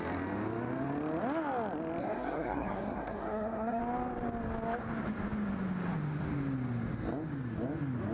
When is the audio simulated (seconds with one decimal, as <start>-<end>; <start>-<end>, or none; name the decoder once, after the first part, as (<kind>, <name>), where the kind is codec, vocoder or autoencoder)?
2.0-3.8 (codec, SNAC)